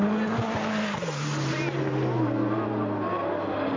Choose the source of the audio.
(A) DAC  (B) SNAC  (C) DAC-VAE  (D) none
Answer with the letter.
D